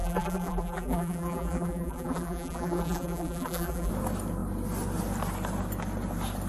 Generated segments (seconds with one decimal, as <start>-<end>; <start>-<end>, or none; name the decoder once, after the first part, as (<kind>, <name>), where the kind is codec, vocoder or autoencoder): 0.0-3.9 (vocoder, BigVGAN v2)